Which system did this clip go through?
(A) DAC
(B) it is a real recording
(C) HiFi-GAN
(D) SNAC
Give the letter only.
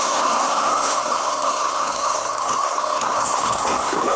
D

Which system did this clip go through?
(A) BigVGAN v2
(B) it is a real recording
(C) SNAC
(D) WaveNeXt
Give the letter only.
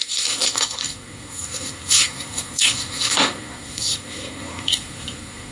C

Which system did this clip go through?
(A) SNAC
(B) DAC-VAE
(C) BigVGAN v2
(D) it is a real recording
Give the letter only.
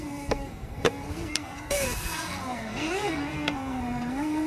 A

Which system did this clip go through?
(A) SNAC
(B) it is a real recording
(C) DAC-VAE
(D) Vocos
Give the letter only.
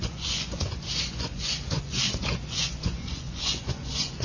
D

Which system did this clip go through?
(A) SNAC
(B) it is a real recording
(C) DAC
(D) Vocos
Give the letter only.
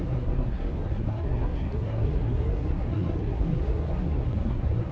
A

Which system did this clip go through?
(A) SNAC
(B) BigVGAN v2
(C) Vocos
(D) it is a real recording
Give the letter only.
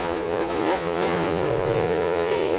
C